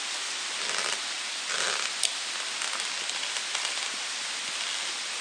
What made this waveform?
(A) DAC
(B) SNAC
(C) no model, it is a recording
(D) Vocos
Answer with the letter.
C